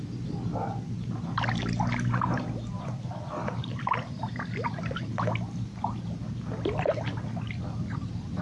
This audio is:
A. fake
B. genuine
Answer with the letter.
B